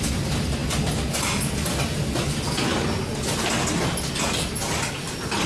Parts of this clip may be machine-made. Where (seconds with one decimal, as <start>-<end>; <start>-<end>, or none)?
none